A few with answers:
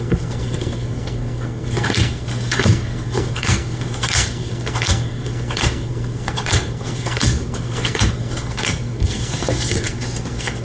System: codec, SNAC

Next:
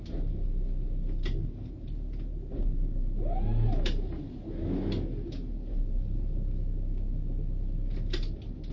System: none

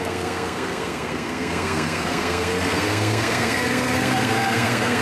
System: codec, SNAC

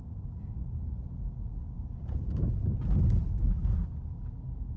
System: none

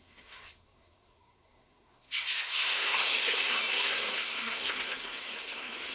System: codec, SNAC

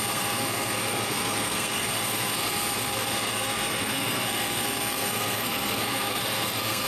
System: codec, SNAC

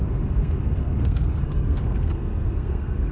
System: codec, SNAC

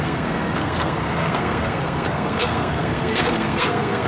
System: codec, SNAC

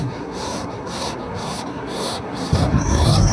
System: codec, SNAC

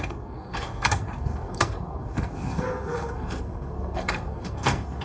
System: codec, SNAC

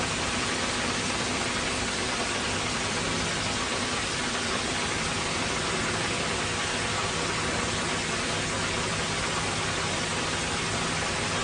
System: none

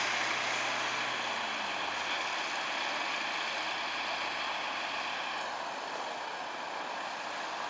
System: none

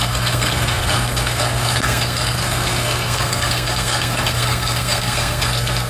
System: codec, SNAC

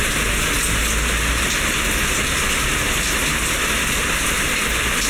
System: none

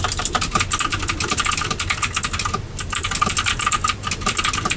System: none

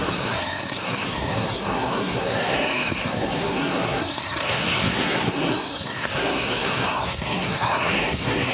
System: codec, SNAC